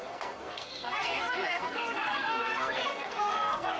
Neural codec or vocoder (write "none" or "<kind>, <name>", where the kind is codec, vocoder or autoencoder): codec, SNAC